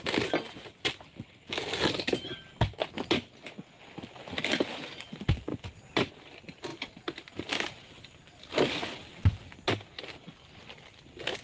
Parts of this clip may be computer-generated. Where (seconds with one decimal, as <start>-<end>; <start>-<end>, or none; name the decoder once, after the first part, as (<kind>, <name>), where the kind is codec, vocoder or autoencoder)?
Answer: none